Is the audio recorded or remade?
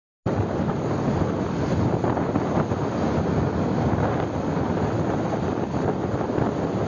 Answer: recorded